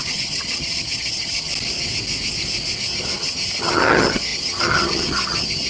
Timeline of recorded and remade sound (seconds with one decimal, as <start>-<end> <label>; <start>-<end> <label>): 0.0-1.5 remade; 1.5-2.8 recorded; 2.8-5.7 remade